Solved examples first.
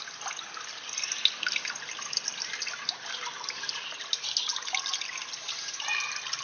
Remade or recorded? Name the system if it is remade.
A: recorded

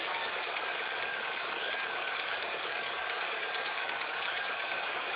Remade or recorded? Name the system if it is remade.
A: remade, codec, DAC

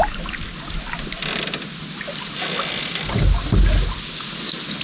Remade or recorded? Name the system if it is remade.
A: recorded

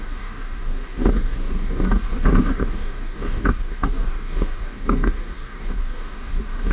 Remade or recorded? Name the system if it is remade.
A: remade, codec, DAC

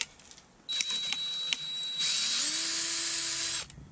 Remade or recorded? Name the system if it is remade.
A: recorded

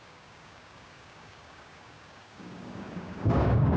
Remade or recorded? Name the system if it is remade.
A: remade, codec, DAC